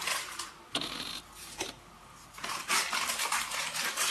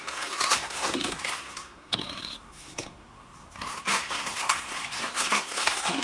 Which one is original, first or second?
first